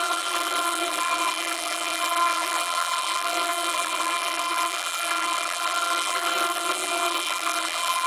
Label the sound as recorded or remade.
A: remade